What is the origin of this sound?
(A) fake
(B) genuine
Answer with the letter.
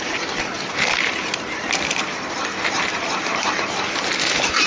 A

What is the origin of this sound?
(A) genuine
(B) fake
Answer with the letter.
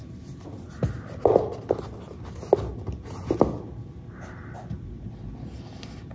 A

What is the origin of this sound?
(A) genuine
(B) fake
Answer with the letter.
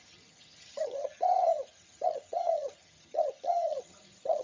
B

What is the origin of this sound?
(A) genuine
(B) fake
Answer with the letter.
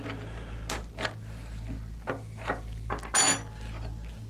A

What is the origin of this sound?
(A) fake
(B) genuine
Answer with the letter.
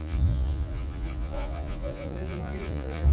A